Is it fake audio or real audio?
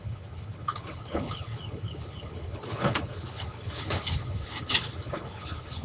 fake